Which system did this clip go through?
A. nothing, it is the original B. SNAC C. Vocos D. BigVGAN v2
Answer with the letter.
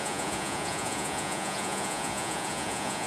C